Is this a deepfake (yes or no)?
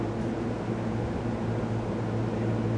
no